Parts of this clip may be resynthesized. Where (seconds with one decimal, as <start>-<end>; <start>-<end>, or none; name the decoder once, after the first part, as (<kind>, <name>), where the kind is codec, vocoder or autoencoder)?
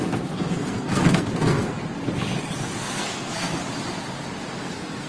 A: 0.0-1.8 (codec, SNAC); 2.8-3.6; 4.6-5.1